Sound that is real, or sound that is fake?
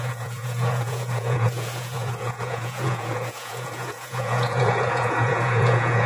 fake